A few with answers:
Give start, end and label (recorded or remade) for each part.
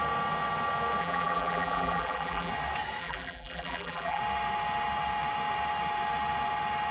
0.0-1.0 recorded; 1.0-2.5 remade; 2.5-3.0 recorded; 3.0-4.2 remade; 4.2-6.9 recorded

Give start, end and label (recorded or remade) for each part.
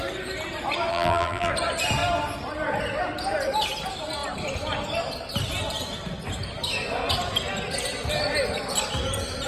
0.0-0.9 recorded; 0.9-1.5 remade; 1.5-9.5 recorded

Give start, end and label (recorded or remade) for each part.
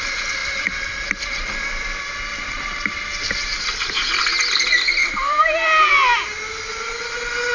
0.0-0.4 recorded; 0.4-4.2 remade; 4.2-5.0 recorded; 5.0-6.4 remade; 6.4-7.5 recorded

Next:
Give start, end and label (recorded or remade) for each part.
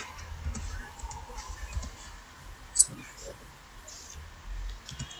0.0-0.8 recorded; 0.8-3.9 remade; 3.9-5.2 recorded